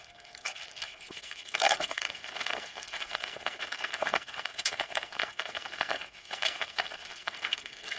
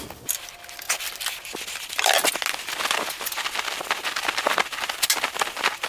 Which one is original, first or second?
second